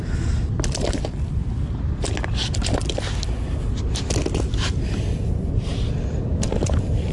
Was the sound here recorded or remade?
recorded